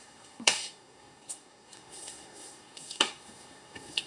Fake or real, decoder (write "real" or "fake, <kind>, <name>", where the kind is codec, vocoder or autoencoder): fake, codec, SNAC